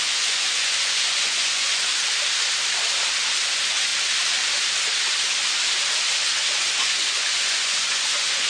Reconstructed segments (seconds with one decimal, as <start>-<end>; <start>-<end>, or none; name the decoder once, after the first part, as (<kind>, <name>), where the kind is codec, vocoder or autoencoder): 0.0-1.9 (vocoder, Vocos); 3.4-3.9; 6.8-8.5